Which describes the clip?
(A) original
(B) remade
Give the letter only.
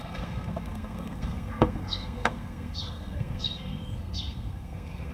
B